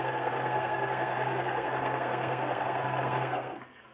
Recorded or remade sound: remade